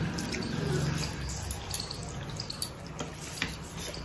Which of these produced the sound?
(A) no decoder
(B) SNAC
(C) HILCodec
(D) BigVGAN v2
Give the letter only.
A